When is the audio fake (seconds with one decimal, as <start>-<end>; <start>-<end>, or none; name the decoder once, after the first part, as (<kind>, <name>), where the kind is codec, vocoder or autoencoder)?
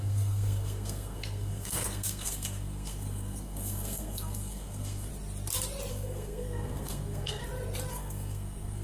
0.0-5.1 (codec, SNAC); 5.9-7.4; 7.9-8.8